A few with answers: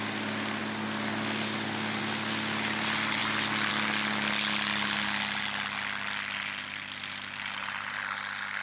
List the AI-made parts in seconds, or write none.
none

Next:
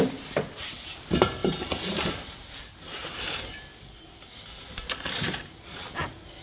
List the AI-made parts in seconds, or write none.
0.0-1.4; 2.1-3.7; 5.2-6.4

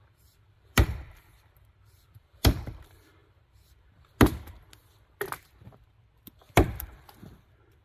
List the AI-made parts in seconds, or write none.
0.0-3.2; 5.9-7.8

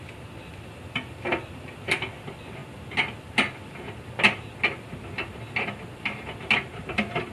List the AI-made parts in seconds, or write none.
0.0-2.6

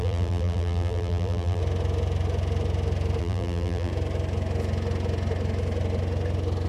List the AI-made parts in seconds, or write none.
0.0-1.6; 3.2-3.9

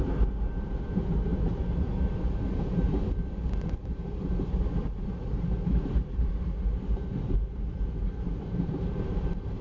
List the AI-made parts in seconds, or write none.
0.0-9.6

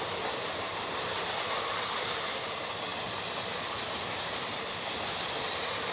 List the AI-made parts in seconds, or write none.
none